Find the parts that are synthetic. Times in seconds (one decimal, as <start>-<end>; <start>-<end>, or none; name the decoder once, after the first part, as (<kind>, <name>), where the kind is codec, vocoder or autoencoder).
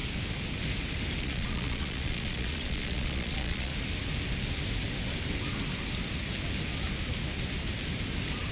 1.2-3.7 (vocoder, Vocos)